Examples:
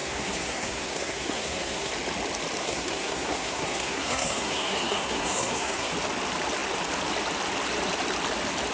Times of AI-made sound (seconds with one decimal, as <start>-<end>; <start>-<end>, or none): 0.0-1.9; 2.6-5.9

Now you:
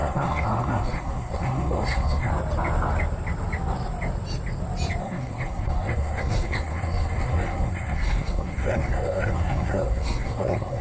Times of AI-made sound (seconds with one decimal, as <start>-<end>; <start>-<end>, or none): 0.0-2.3; 5.0-10.8

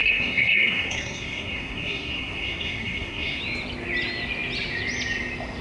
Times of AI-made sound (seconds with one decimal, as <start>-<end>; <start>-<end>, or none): 0.0-3.4

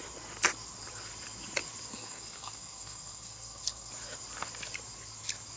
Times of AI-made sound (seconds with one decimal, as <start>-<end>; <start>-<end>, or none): 1.9-3.9

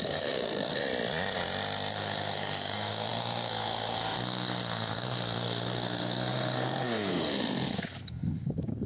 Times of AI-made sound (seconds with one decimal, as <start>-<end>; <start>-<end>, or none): 0.0-0.8; 1.9-8.9

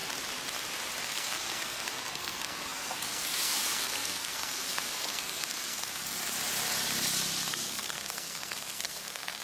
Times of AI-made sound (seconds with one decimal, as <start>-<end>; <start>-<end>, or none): 1.0-6.2; 7.5-9.4

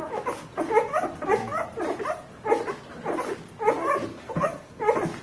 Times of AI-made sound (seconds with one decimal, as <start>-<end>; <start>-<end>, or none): 4.1-4.8